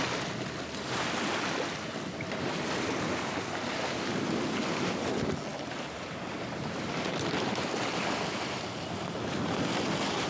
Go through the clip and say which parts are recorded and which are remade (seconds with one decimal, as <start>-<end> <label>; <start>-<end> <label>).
0.0-5.5 recorded; 5.5-7.5 remade; 7.5-10.3 recorded